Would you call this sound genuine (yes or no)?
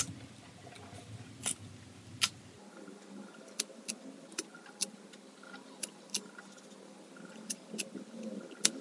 yes